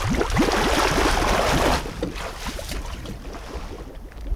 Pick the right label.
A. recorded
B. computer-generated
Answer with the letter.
A